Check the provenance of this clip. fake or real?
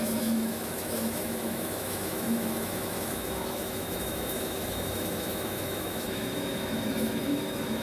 fake